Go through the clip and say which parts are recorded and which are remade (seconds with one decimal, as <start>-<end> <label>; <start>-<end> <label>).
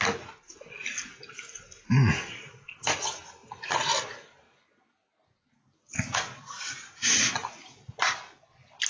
0.0-8.9 recorded